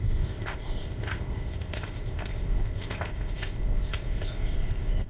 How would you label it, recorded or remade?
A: remade